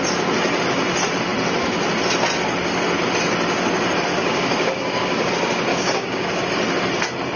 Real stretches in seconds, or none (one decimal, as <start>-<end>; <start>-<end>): 0.0-4.1; 5.3-5.7; 6.4-7.4